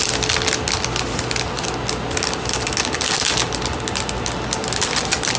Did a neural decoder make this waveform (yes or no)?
no